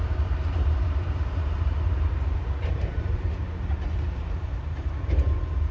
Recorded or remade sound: remade